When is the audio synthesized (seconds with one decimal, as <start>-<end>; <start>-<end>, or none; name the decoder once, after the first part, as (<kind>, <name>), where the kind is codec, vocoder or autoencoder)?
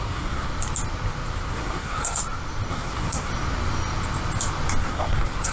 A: 0.0-0.5 (codec, SNAC); 1.5-2.2; 2.7-3.3; 4.8-5.5